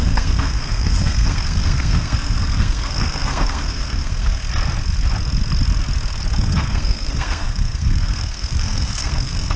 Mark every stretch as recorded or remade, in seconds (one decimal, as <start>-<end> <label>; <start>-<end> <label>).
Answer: 0.0-4.4 remade; 4.4-6.4 recorded; 6.4-9.6 remade